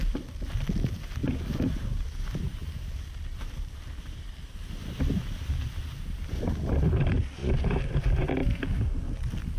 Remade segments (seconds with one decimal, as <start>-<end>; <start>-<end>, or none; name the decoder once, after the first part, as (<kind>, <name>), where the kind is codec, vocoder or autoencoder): 0.0-1.2 (vocoder, BigVGAN v2); 2.0-7.4